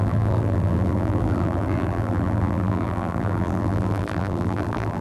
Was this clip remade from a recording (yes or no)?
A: yes